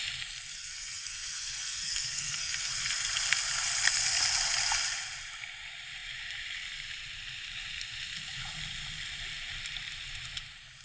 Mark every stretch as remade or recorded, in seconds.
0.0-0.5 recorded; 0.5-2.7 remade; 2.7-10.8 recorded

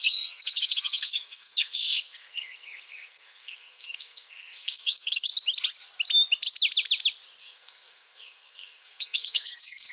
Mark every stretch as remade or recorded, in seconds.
0.0-5.3 remade; 5.3-7.4 recorded; 7.4-9.9 remade